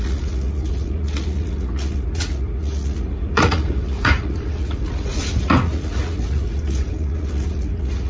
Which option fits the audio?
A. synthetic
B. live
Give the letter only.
A